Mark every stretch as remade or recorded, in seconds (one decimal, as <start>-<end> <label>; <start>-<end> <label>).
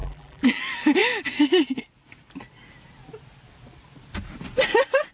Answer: 0.0-0.6 remade; 0.6-5.1 recorded